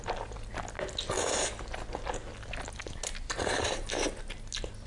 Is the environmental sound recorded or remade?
recorded